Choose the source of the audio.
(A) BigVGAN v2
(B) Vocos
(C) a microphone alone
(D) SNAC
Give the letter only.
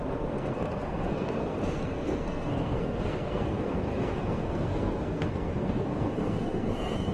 D